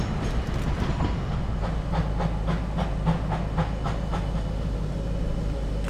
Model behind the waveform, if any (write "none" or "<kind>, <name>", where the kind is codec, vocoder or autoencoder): none